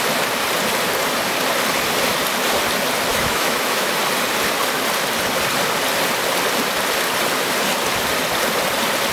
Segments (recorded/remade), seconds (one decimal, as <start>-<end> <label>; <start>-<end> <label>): 0.0-3.1 recorded; 3.1-4.0 remade; 4.0-9.1 recorded